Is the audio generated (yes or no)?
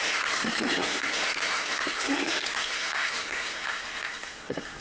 yes